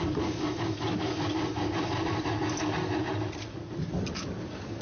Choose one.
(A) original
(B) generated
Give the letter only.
A